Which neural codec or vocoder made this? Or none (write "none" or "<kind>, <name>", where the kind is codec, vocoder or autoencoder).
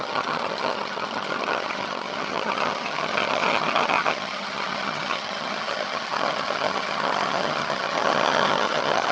vocoder, HiFi-GAN